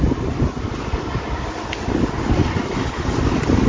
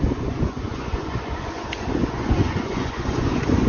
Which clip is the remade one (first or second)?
second